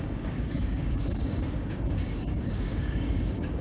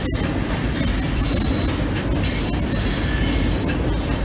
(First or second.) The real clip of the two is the second